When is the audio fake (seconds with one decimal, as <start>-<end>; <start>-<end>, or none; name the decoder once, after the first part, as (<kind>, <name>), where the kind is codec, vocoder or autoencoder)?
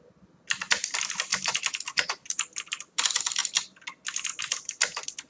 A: 0.0-3.4 (vocoder, BigVGAN v2); 4.4-5.3